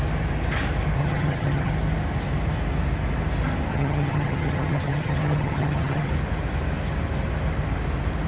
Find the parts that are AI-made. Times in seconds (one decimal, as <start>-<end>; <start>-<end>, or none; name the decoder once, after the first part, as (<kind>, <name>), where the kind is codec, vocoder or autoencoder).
1.0-1.7 (vocoder, HiFi-GAN); 3.7-6.1